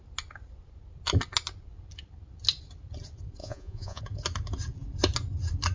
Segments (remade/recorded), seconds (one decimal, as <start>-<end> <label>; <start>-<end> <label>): 0.0-3.4 recorded; 3.4-4.0 remade; 4.0-5.7 recorded